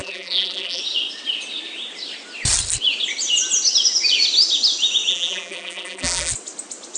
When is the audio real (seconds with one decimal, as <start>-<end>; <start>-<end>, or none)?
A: 0.8-5.1; 6.3-7.0